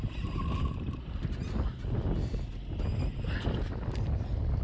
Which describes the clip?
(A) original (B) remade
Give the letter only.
A